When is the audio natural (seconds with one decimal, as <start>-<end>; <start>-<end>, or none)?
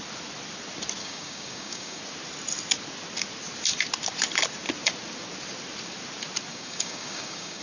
0.0-1.0; 2.0-6.5